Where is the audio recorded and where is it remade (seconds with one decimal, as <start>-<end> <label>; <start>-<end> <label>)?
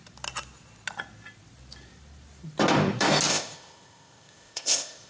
0.0-3.3 recorded; 3.3-5.1 remade